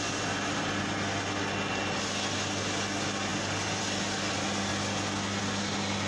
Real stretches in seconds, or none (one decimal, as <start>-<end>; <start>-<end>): 0.0-6.1